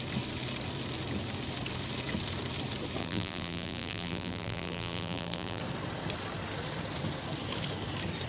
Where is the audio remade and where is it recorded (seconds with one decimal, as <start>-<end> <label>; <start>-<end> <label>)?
0.0-3.0 recorded; 3.0-5.6 remade; 5.6-8.3 recorded